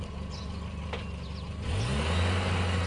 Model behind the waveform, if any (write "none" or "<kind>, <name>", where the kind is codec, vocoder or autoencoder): none